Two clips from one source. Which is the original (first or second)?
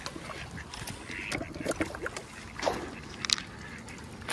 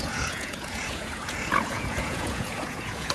first